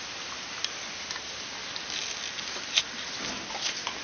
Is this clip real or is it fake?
real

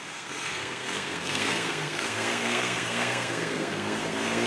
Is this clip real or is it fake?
fake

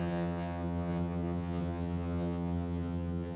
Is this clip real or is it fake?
fake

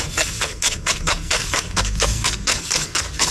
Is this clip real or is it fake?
fake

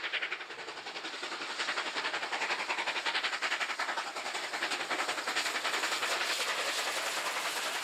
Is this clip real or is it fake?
real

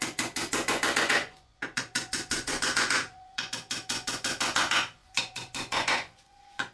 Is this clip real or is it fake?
fake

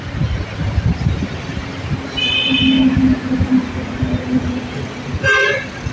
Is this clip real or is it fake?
real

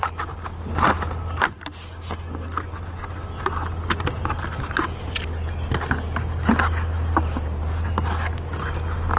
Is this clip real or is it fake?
real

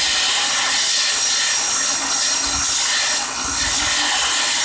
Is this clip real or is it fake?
real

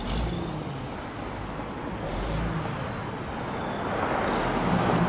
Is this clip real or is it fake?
real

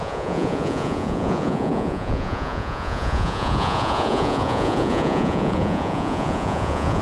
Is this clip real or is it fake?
fake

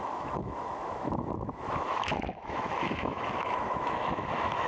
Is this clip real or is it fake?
fake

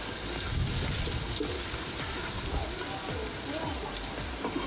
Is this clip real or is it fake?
real